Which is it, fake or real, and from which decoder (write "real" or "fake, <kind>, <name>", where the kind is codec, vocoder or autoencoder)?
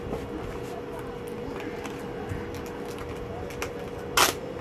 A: real